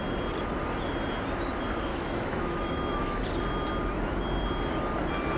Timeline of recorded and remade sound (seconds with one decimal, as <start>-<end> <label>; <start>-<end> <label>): 0.0-1.9 recorded; 1.9-3.2 remade; 3.2-5.4 recorded